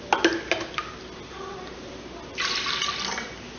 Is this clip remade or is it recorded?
recorded